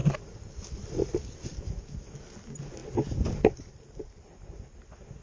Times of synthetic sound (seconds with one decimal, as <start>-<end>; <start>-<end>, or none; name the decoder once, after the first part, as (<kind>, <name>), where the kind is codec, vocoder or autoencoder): 1.5-2.1 (vocoder, BigVGAN v2)